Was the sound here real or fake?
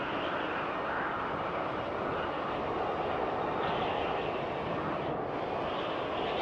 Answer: real